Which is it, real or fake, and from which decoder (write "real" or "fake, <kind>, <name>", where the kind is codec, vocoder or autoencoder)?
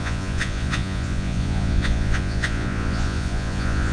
fake, vocoder, Vocos